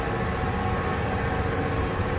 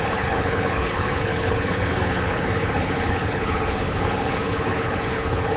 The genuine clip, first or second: first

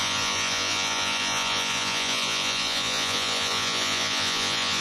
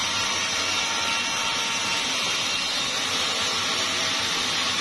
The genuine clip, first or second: second